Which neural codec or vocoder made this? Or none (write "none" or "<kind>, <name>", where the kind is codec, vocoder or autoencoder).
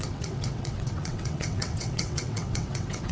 vocoder, WaveNeXt